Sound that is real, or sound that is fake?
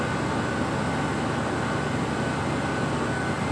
real